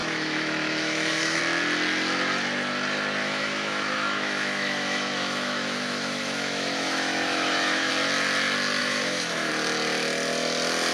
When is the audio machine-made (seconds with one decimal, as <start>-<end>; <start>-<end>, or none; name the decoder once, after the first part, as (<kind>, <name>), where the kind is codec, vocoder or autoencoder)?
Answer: 0.0-1.4 (autoencoder, DAC-VAE); 3.2-7.9; 8.8-9.5